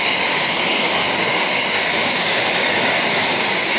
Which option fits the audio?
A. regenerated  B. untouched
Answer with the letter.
A